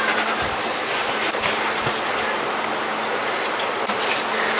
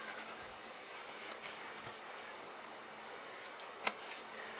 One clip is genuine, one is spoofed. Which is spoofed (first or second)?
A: second